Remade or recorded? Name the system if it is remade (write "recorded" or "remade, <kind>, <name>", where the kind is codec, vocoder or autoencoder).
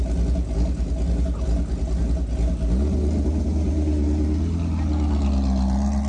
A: recorded